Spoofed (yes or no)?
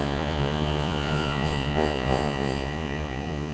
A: yes